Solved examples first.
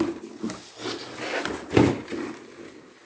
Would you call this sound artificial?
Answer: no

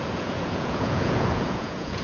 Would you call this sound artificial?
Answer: yes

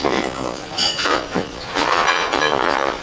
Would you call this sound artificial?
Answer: yes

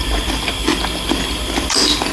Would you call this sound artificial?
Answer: no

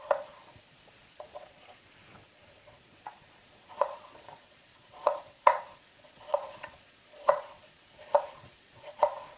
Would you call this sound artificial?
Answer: yes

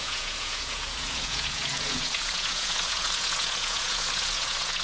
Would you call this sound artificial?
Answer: yes